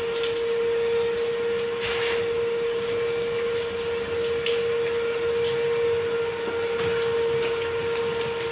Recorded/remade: recorded